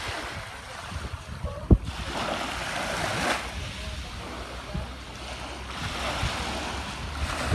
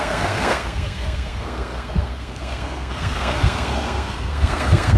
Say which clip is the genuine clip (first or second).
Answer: first